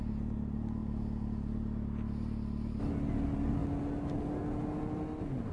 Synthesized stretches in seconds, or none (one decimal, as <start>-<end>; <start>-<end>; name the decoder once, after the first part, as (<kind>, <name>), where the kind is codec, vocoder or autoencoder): none